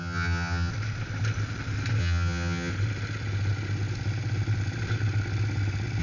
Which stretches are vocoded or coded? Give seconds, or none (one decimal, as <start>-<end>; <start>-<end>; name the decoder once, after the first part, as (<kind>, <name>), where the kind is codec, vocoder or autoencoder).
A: 0.0-0.7 (vocoder, HiFi-GAN); 2.0-2.7

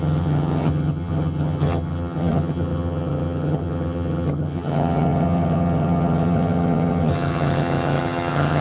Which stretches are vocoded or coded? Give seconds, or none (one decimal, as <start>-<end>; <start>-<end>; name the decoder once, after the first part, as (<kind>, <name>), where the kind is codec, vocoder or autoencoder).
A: 0.0-8.6 (vocoder, HiFi-GAN)

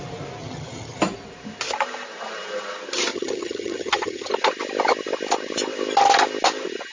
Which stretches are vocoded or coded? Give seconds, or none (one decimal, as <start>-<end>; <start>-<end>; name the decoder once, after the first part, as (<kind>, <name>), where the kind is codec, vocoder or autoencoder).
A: 0.4-1.0 (vocoder, HiFi-GAN); 3.1-4.3

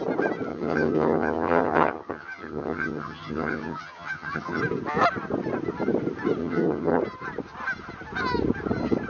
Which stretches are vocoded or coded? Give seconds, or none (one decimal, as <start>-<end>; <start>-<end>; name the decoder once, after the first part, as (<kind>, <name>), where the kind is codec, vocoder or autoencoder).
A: 0.5-4.6 (vocoder, HiFi-GAN); 6.4-7.0

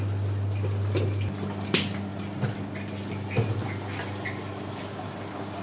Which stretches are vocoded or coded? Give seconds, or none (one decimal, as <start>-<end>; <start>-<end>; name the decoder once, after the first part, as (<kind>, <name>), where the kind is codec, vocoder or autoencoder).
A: none

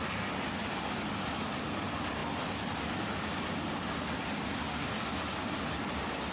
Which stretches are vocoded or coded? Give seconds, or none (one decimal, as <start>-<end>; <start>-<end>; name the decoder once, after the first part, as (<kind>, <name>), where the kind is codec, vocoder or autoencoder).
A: none

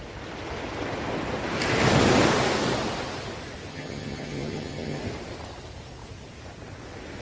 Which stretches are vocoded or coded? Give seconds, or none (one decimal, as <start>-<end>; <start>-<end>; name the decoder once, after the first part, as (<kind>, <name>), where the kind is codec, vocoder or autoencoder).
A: 3.7-5.0 (vocoder, HiFi-GAN)